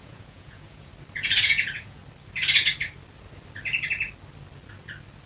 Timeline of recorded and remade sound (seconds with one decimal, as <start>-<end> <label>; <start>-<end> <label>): 0.0-0.9 remade; 0.9-1.4 recorded; 1.4-2.0 remade; 2.0-5.3 recorded